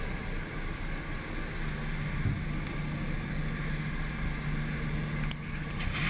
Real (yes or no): yes